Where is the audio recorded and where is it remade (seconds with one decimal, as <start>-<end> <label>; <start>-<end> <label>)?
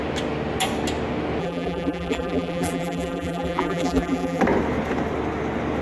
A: 0.0-1.4 recorded; 1.4-4.4 remade; 4.4-5.8 recorded